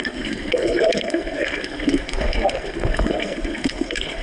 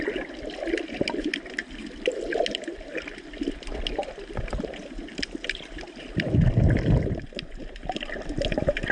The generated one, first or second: first